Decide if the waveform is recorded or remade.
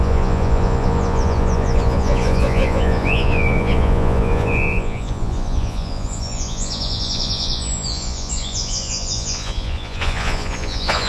remade